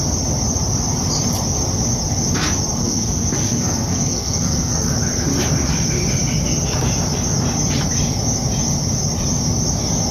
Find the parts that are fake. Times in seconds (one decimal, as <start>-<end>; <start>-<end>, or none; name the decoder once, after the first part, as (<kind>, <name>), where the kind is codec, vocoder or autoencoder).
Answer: 2.8-4.9 (codec, SNAC)